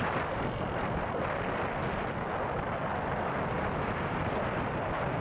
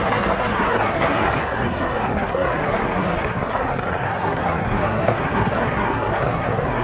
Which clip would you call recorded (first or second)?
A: first